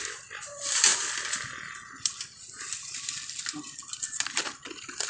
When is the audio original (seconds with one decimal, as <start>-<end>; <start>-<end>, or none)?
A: 0.0-5.1